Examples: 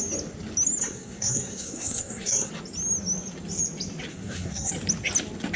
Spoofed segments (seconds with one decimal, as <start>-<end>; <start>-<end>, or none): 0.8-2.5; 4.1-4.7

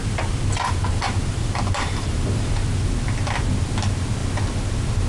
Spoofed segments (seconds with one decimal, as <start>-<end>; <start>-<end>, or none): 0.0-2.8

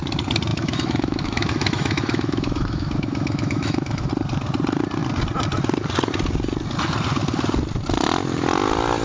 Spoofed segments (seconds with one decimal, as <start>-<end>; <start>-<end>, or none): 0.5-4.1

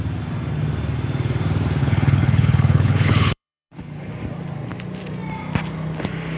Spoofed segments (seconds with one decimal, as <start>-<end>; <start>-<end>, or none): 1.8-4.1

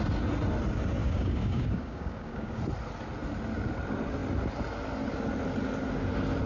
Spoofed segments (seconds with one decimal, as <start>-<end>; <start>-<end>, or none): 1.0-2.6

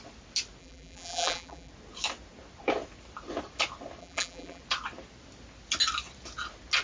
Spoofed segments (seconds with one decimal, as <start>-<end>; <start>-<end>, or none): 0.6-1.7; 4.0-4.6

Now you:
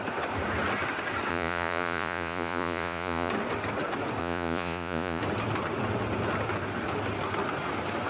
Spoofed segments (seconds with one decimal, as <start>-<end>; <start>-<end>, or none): 1.3-3.3; 4.2-5.2

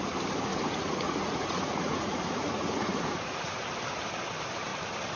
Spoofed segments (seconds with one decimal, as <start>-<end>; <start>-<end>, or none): 0.5-3.6